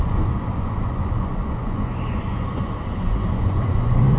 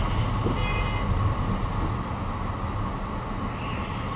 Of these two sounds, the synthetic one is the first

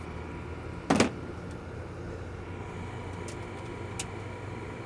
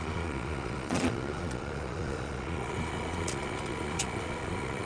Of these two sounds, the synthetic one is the second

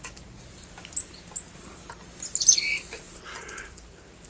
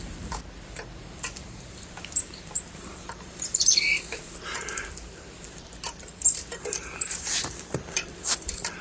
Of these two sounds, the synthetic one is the second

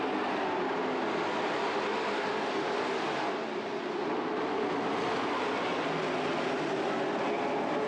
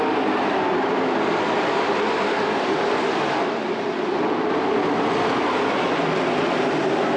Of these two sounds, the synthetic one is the second